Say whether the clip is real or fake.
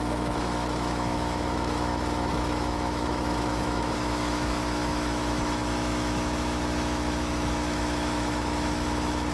fake